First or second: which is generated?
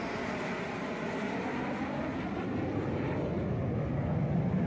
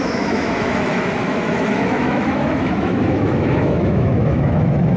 second